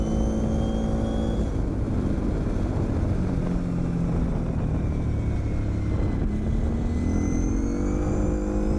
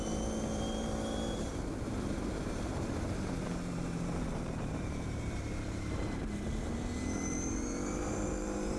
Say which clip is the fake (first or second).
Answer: second